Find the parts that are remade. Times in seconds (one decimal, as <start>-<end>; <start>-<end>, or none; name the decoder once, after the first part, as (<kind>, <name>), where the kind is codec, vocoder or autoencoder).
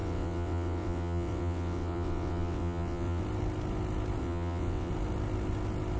0.0-3.2 (vocoder, WaveNeXt); 4.2-4.9